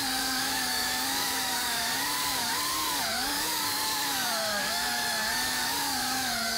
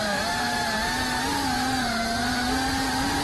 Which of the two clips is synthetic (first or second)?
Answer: first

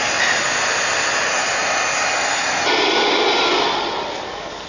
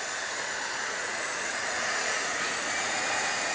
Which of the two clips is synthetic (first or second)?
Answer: second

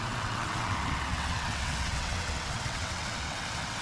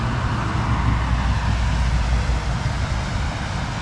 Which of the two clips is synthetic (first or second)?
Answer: first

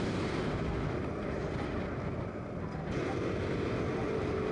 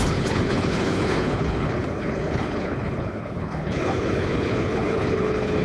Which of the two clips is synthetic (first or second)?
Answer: second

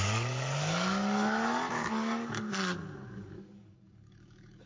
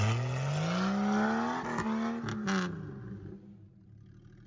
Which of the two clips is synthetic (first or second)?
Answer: first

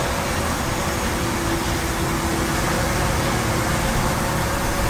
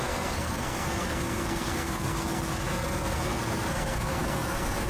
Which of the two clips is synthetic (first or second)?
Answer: second